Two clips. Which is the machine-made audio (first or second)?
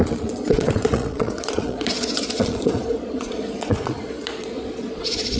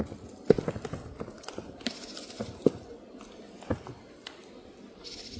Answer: first